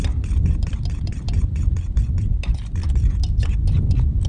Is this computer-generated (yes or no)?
yes